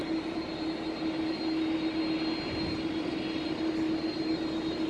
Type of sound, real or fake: real